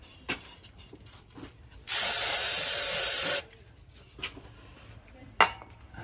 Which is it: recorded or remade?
recorded